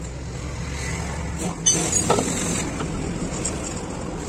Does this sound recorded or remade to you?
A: recorded